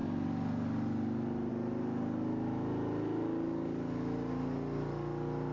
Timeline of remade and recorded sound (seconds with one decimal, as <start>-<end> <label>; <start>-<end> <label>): 0.0-5.5 recorded